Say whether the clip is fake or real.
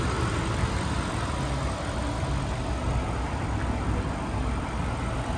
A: real